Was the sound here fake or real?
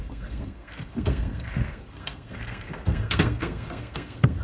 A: fake